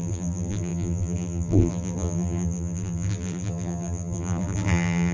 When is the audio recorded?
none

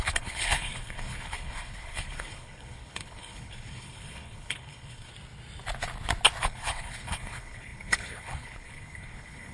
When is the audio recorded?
5.1-6.4

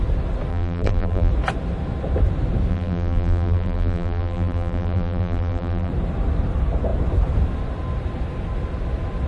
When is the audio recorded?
0.0-0.5; 1.3-2.7; 5.9-9.3

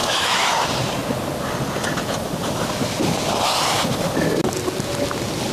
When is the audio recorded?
0.5-5.5

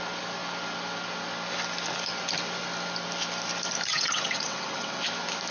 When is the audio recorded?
0.0-3.9; 5.0-5.5

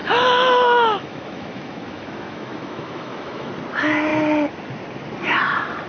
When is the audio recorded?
3.5-5.9